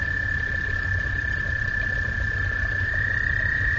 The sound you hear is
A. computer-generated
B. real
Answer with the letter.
B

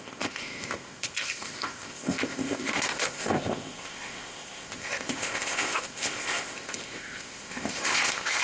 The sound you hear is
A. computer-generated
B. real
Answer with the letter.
A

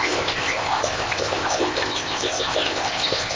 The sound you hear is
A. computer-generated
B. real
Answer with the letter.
A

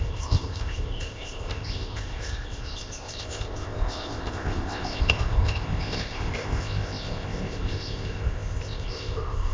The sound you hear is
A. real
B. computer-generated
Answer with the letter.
B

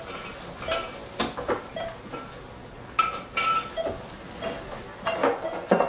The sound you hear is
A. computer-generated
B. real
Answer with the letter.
B